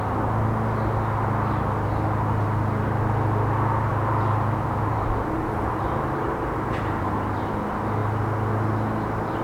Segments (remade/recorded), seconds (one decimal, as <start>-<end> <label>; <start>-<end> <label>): 0.0-3.9 recorded; 3.9-7.4 remade; 7.4-9.4 recorded